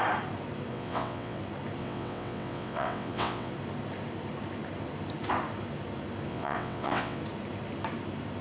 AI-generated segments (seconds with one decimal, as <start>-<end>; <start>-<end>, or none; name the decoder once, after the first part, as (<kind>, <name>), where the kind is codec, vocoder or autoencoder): 0.7-1.4 (vocoder, WaveNeXt); 1.8-3.5; 6.3-7.2